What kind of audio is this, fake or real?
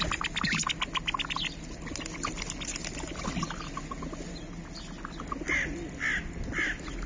real